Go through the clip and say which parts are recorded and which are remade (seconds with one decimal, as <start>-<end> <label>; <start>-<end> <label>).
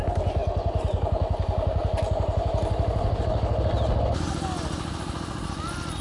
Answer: 0.0-6.0 recorded